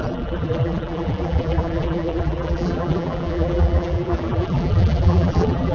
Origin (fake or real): fake